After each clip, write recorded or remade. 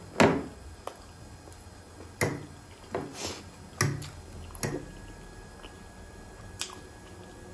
recorded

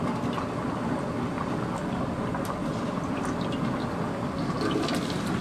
recorded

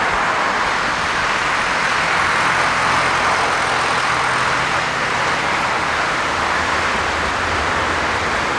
recorded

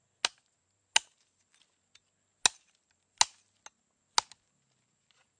recorded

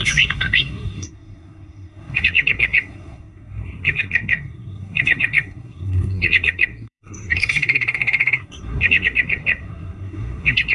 remade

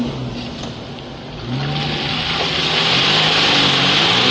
recorded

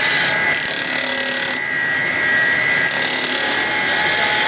recorded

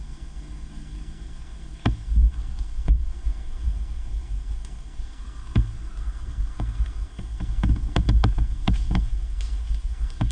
remade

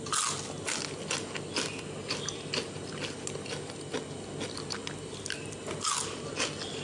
recorded